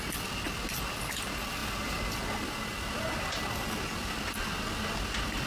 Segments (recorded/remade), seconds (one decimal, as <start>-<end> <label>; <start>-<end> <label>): 0.0-5.5 recorded